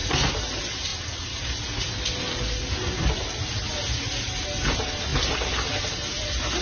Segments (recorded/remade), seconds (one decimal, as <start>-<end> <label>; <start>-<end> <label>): 0.0-6.6 recorded